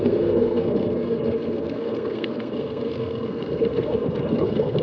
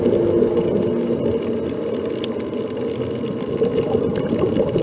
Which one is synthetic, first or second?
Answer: first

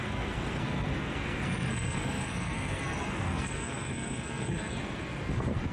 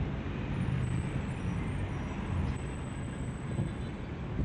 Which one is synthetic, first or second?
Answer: first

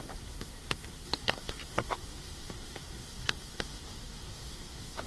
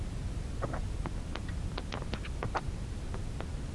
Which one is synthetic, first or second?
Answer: first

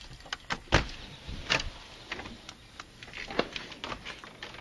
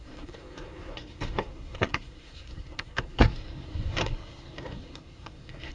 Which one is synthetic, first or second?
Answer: second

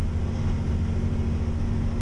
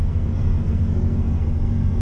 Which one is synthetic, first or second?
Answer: second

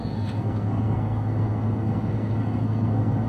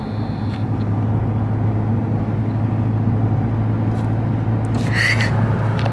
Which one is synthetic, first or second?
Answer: first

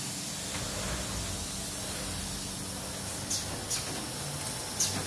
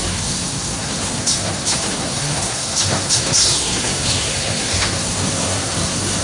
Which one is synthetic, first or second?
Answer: second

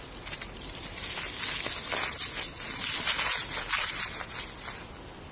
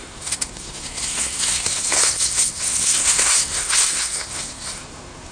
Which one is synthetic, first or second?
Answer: second